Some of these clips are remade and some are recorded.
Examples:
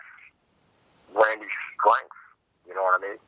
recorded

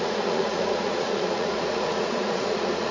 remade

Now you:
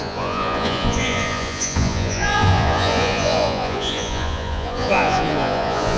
remade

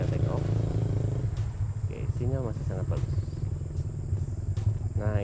recorded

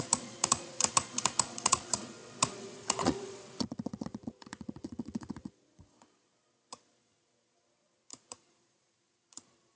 remade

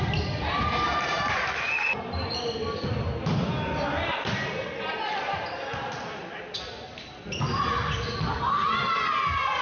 recorded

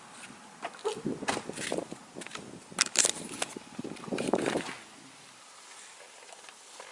recorded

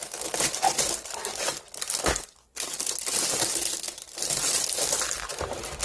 recorded